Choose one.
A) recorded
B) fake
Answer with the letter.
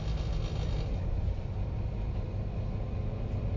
A